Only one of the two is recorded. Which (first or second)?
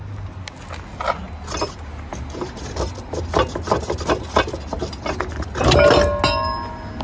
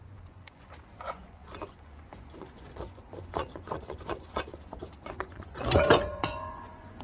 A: first